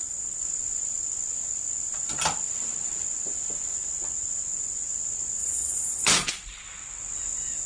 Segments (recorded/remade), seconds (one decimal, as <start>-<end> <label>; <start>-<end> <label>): 0.0-5.4 recorded; 5.4-6.3 remade; 6.3-7.7 recorded